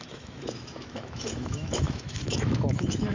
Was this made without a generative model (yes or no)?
no